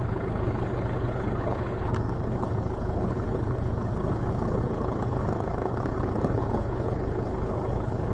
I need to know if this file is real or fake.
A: fake